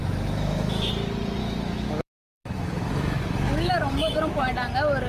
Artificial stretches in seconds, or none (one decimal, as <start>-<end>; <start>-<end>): 0.0-0.9; 1.4-4.4